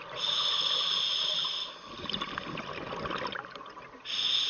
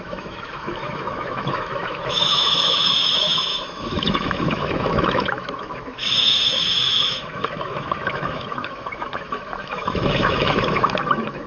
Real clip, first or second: first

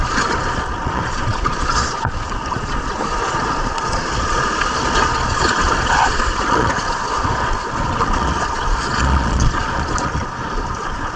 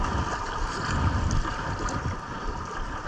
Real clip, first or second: second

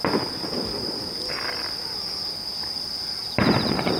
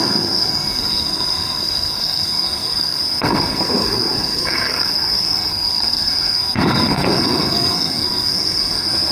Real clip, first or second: first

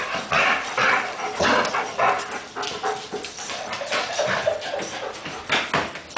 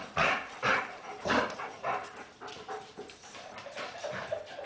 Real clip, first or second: first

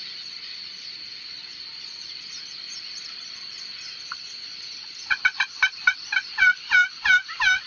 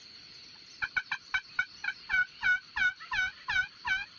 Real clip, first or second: second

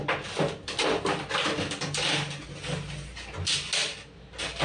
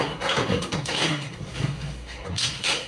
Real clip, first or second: first